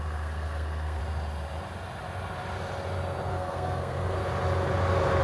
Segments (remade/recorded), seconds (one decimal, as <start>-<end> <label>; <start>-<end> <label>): 0.0-1.0 remade; 1.0-3.3 recorded; 3.3-4.2 remade; 4.2-5.2 recorded